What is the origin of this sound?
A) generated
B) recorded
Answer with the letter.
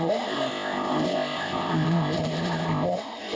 A